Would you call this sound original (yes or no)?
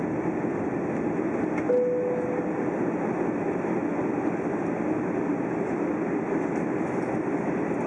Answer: yes